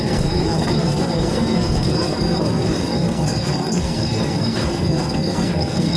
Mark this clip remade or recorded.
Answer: remade